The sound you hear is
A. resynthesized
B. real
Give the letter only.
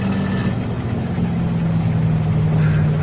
B